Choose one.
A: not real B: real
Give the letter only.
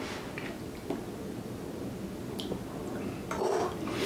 B